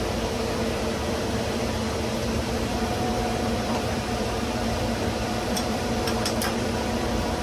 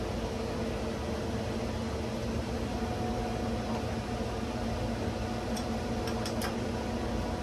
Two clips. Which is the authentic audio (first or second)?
second